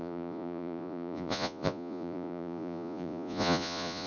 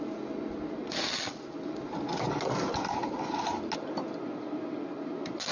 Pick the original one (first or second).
second